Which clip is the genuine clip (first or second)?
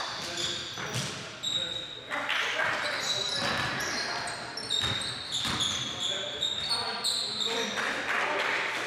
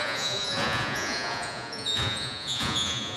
first